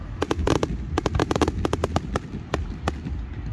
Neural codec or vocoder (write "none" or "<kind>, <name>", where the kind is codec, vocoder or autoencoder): none